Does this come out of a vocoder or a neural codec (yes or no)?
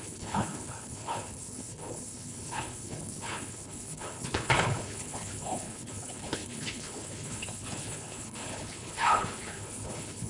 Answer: yes